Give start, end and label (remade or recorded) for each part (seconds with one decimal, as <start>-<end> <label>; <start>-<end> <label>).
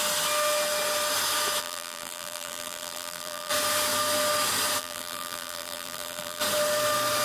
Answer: 0.0-1.6 recorded; 1.6-3.5 remade; 3.5-4.8 recorded; 4.8-6.4 remade; 6.4-7.2 recorded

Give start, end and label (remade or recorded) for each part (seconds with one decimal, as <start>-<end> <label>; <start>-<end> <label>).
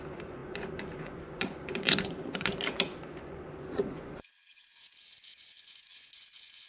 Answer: 0.0-6.7 remade